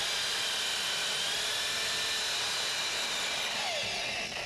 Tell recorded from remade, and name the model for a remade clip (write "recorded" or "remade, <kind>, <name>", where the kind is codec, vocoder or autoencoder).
recorded